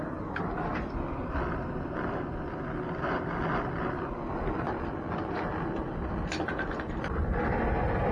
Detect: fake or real real